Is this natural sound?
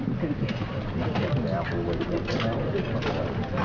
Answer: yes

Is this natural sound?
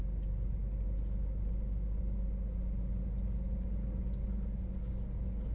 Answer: yes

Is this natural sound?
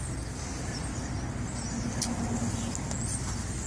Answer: yes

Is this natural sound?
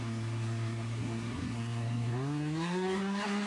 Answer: no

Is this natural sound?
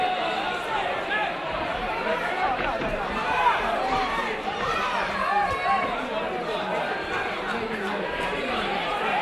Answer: no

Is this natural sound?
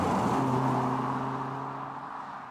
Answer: yes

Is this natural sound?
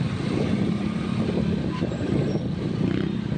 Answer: no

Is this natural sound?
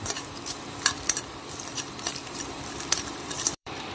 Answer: no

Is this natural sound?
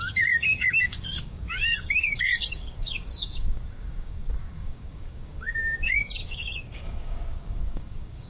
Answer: no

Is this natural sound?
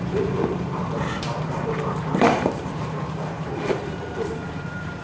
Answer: no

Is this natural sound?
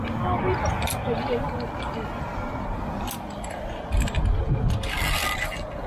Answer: yes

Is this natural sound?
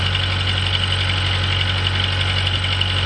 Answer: yes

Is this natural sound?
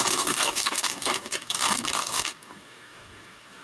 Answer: no